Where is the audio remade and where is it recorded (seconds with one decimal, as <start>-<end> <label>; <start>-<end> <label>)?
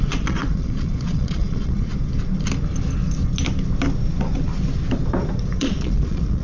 0.0-1.9 remade; 1.9-5.6 recorded; 5.6-6.4 remade